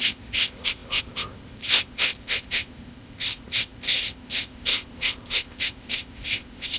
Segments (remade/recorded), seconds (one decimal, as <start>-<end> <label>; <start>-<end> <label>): 0.0-6.8 remade